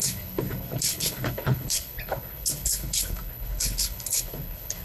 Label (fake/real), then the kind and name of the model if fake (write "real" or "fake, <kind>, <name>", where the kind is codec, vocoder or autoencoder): fake, codec, HILCodec